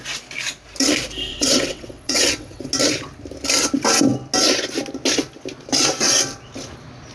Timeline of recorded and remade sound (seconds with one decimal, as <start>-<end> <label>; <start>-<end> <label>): 0.0-1.3 recorded; 1.3-2.7 remade; 2.7-7.1 recorded